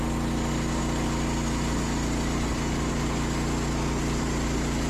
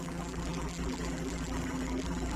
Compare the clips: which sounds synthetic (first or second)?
second